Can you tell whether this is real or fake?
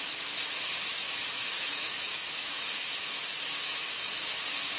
fake